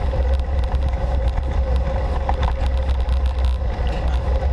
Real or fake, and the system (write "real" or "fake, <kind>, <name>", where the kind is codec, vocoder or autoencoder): real